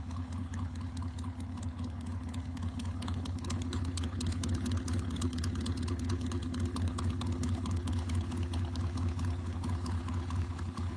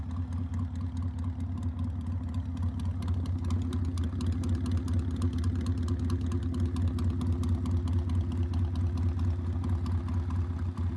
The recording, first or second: second